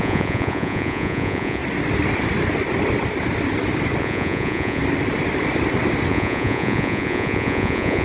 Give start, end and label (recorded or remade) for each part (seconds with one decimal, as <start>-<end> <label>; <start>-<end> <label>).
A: 0.0-1.6 remade; 1.6-4.0 recorded; 4.0-4.8 remade; 4.8-6.1 recorded; 6.1-8.0 remade